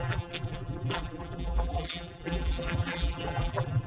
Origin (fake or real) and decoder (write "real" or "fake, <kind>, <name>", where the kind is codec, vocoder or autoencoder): fake, vocoder, BigVGAN v2